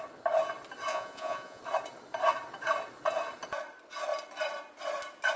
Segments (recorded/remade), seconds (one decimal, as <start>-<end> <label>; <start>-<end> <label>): 0.0-0.9 recorded; 0.9-1.6 remade; 1.6-5.4 recorded